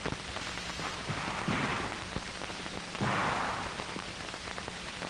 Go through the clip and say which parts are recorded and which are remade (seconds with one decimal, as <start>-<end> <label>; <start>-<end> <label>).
0.0-1.7 remade; 1.7-2.5 recorded; 2.5-5.1 remade